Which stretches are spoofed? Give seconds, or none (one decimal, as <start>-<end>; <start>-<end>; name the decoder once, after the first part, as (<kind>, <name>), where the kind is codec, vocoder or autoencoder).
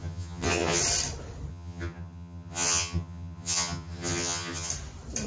0.0-0.8 (vocoder, HiFi-GAN); 1.5-4.7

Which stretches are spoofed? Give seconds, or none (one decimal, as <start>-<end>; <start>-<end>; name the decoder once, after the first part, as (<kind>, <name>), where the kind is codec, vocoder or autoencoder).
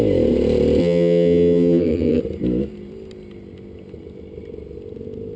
0.8-2.2 (vocoder, HiFi-GAN)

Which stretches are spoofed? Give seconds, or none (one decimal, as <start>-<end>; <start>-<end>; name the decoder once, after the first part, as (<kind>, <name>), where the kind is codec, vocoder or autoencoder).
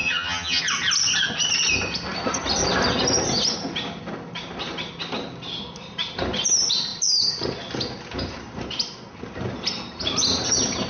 0.0-0.6 (vocoder, HiFi-GAN)